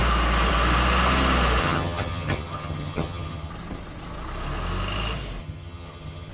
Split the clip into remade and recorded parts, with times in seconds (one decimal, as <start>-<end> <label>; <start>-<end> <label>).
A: 0.0-1.6 recorded; 1.6-3.5 remade; 3.5-5.4 recorded; 5.4-6.3 remade